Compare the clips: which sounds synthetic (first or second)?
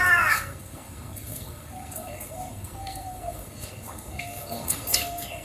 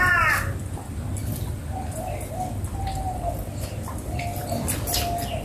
first